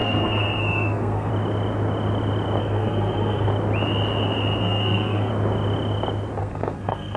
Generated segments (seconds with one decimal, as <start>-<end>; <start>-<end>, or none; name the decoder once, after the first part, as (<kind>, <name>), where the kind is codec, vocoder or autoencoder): 0.0-1.3 (codec, SNAC); 2.6-3.5; 4.6-5.3; 6.4-7.2